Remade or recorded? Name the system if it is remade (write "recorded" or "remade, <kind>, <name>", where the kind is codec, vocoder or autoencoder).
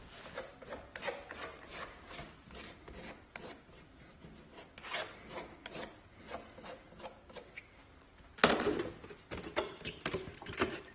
recorded